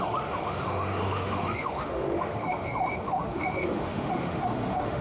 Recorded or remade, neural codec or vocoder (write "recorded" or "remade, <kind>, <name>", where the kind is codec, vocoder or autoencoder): remade, autoencoder, DAC-VAE